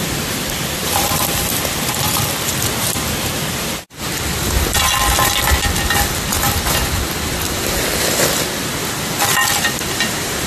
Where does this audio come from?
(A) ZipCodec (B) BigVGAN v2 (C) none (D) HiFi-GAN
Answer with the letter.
B